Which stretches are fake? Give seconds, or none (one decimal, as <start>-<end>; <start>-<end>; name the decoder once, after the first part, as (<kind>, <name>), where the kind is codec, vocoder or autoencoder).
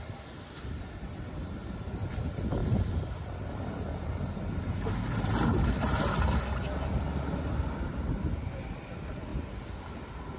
none